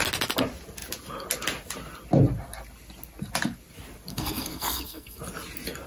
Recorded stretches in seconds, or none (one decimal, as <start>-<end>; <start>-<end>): 0.0-4.1; 5.2-5.9